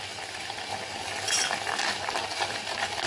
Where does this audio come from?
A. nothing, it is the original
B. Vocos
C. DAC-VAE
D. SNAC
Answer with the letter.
A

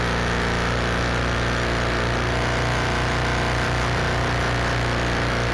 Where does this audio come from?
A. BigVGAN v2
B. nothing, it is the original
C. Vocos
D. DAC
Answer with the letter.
B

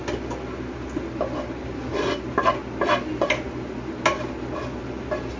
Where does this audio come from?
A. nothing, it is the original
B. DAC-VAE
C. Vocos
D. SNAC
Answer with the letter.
A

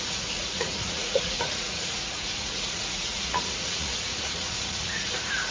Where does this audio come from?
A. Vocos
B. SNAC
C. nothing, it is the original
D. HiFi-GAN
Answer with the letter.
A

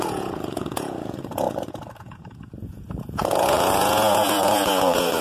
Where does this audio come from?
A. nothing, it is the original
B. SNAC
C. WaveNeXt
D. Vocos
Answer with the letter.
D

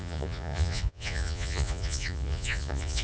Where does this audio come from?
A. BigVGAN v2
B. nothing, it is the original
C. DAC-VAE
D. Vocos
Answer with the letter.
D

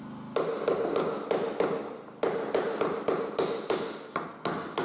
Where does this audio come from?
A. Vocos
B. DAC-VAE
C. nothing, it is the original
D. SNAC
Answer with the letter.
C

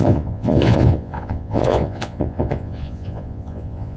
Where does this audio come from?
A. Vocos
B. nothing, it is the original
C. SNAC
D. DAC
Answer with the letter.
A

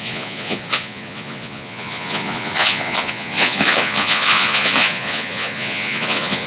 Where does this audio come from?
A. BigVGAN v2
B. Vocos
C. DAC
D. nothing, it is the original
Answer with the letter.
B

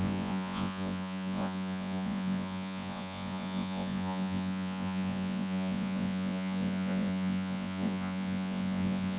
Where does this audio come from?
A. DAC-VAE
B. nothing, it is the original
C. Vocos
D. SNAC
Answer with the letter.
C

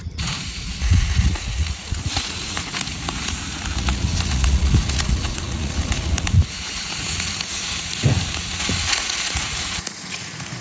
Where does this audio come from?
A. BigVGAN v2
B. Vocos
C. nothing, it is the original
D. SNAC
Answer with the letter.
B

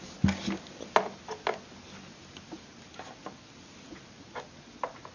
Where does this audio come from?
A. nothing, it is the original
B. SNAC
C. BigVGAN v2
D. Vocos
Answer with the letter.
A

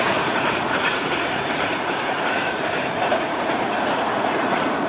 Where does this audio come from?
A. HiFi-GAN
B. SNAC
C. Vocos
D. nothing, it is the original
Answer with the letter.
C